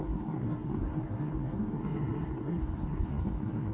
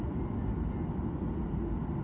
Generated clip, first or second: first